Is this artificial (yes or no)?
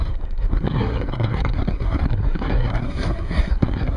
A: yes